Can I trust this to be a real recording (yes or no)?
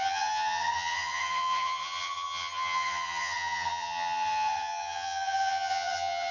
no